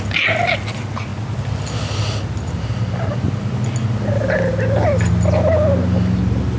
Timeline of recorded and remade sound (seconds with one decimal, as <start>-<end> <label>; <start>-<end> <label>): 0.0-6.6 recorded